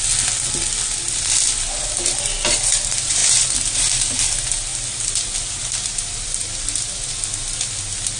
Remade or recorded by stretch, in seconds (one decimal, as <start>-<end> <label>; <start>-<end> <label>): 0.0-8.2 recorded